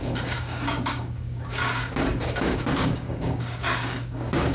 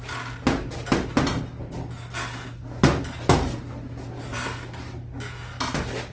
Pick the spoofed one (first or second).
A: first